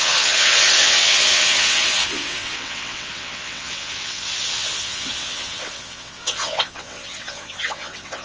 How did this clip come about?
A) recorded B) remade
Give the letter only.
B